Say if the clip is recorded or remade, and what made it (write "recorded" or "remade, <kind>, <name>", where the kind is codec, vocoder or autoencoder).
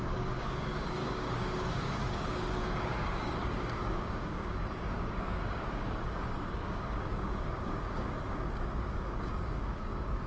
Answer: remade, codec, DAC